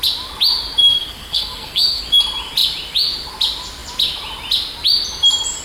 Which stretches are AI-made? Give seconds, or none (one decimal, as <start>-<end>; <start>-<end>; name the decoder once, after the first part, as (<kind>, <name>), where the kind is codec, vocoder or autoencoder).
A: 0.8-2.0 (codec, SNAC)